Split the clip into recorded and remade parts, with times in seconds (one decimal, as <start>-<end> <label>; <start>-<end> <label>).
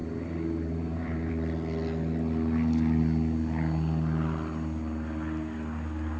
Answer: 0.0-1.3 remade; 1.3-6.2 recorded